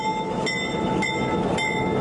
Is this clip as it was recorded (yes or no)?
yes